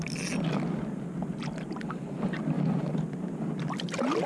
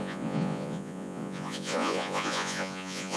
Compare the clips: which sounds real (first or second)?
first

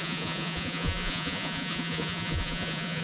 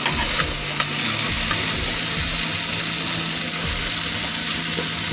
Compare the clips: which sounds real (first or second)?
second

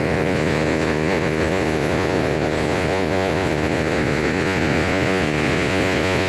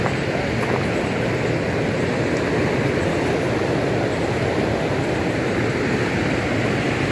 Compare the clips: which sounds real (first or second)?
second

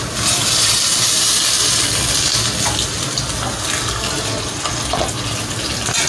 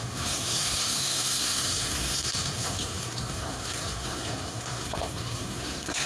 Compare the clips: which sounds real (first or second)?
first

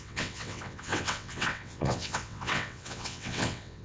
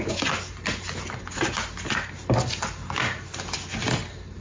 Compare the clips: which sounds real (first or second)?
second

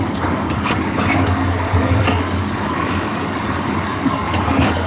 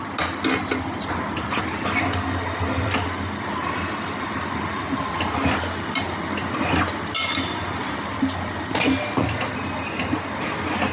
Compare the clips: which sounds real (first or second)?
second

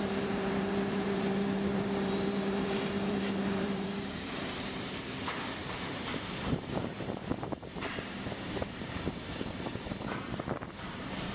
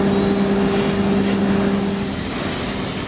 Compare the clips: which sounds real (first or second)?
second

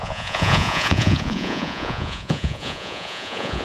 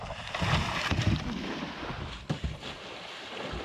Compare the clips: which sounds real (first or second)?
second